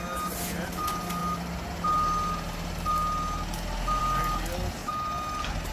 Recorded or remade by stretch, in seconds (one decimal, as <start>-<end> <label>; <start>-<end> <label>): 0.0-5.7 recorded